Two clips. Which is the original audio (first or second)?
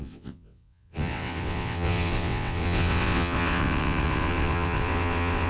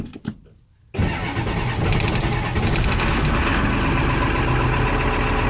second